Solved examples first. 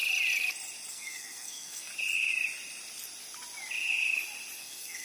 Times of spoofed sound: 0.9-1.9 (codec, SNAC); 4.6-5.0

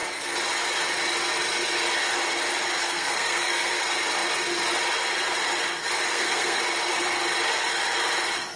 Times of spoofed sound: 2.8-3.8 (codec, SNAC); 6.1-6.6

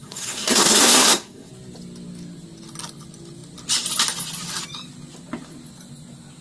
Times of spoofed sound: 0.0-1.5 (codec, SNAC)

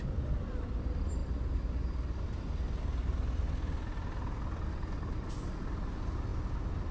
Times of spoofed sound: none

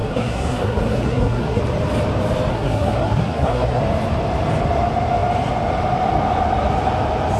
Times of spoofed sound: 0.0-1.6 (codec, SNAC); 2.5-3.8